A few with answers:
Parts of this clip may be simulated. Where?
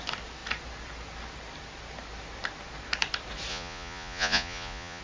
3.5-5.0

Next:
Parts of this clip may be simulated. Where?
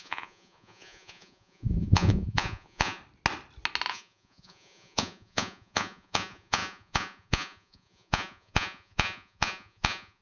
0.0-3.0; 3.9-10.2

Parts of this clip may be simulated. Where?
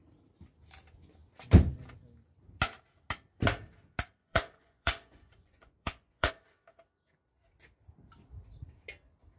4.2-6.3